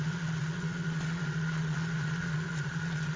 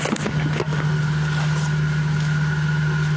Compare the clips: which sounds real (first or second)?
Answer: second